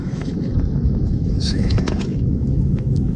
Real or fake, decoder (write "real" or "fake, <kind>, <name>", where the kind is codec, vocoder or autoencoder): fake, autoencoder, DAC-VAE